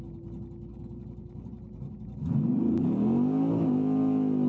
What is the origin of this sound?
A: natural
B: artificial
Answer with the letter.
A